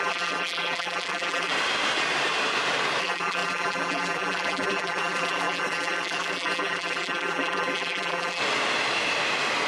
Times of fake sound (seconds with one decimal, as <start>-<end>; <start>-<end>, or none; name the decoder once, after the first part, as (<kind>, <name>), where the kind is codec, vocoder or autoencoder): 0.0-1.5 (vocoder, BigVGAN v2); 3.0-8.4